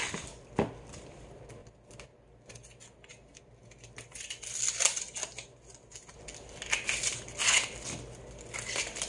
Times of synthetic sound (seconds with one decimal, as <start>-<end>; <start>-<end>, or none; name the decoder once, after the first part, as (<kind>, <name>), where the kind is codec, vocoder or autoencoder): none